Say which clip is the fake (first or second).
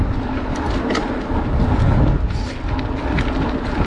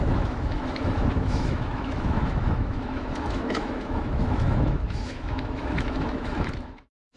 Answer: second